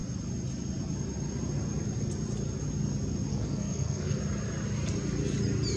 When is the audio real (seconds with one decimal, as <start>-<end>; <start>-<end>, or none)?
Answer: 0.0-3.3; 4.2-5.8